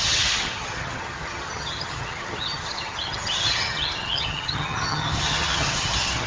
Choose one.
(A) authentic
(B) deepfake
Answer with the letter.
B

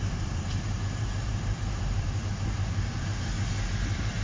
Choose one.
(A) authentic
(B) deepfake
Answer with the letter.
B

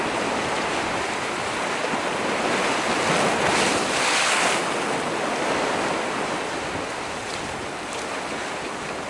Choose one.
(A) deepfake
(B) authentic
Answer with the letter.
B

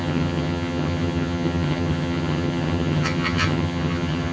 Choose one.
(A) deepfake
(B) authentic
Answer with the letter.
A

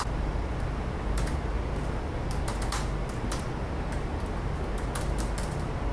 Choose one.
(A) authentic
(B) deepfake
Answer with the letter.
A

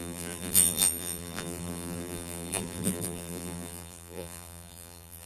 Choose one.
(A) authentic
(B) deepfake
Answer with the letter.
B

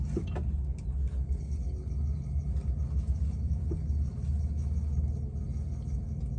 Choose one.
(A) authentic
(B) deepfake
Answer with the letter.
A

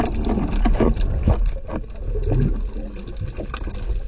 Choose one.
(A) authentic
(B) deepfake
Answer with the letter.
A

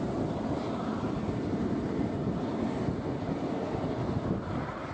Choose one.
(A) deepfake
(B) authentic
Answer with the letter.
B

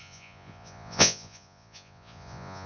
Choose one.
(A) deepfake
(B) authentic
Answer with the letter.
A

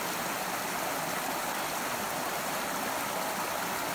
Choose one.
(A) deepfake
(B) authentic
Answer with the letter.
B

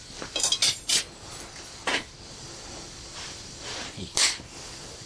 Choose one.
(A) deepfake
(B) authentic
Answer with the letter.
B